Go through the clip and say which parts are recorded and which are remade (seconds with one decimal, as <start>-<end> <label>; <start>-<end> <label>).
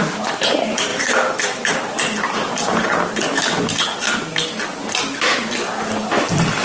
0.0-0.9 remade; 0.9-1.4 recorded; 1.4-3.5 remade; 3.5-6.6 recorded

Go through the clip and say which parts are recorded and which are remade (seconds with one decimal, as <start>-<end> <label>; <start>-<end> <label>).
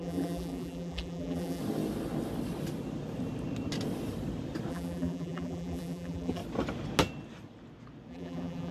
0.0-1.6 remade; 1.6-4.7 recorded; 4.7-6.4 remade; 6.4-8.1 recorded; 8.1-8.7 remade